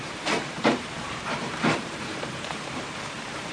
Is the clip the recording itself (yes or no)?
no